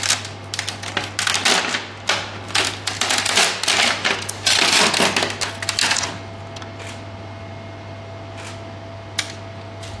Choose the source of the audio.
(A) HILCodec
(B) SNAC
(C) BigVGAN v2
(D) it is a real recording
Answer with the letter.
D